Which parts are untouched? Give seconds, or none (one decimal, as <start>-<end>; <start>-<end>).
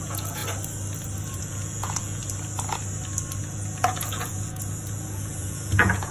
0.4-1.4; 2.2-3.4